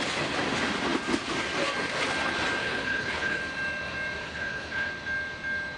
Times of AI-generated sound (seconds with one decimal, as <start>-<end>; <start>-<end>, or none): 2.6-3.4; 4.2-4.9